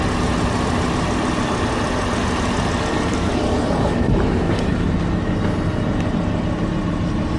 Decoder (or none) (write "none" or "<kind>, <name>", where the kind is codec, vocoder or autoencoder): none